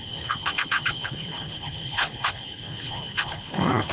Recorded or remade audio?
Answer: remade